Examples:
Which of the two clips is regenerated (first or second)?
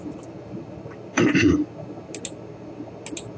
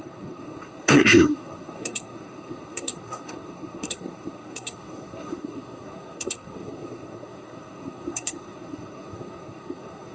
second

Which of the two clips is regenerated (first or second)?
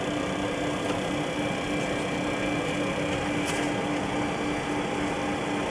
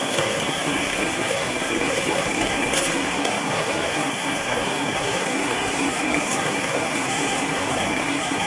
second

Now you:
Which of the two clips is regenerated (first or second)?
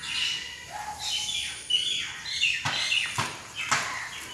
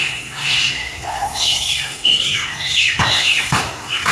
second